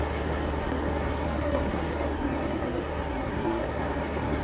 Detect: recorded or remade remade